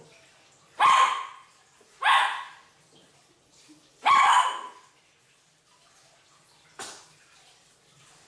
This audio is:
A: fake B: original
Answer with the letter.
B